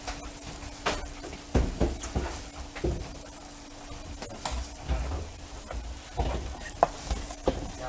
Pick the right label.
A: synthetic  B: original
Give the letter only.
B